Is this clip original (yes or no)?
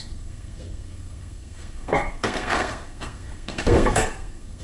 no